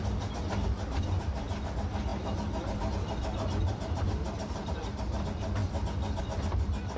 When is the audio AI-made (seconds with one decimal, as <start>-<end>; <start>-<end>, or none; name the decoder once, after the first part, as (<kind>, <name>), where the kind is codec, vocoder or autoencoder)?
none